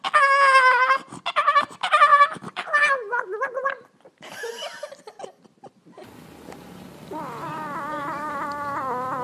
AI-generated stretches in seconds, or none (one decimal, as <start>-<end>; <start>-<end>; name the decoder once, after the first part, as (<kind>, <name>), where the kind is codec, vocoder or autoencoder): 2.1-4.6 (vocoder, BigVGAN v2)

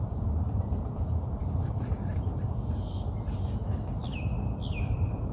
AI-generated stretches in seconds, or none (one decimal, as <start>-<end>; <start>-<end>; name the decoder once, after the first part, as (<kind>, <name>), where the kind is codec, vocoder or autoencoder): 0.0-3.6 (vocoder, BigVGAN v2); 4.8-5.3

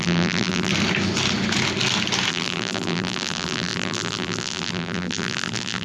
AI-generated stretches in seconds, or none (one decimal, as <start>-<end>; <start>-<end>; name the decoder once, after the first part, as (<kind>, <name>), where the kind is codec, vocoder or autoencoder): 0.0-0.7 (vocoder, BigVGAN v2); 2.3-5.8

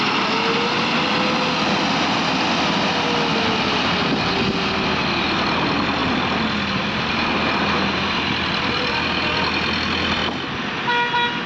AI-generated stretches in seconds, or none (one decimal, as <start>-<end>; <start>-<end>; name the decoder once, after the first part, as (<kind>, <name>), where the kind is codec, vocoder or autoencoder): none

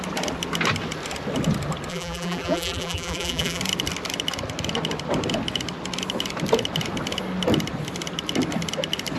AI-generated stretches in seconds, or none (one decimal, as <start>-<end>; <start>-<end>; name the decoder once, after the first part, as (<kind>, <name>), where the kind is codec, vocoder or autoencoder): 1.9-3.6 (vocoder, BigVGAN v2)

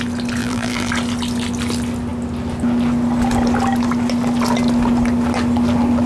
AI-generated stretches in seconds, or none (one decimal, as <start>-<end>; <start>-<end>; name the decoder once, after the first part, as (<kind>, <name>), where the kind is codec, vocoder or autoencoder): 0.4-0.9 (vocoder, BigVGAN v2)